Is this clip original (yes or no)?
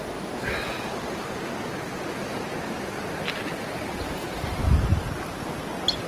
yes